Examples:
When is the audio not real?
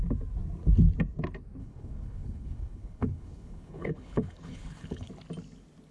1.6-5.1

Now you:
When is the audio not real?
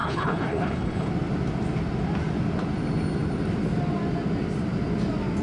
0.0-1.1